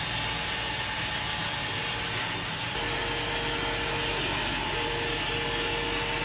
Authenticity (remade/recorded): recorded